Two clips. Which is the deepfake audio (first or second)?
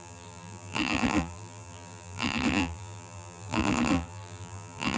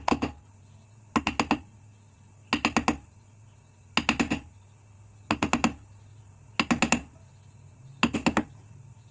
first